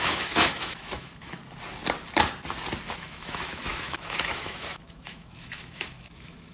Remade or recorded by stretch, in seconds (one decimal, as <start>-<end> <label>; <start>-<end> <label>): 0.0-1.4 remade; 1.4-2.9 recorded; 2.9-6.5 remade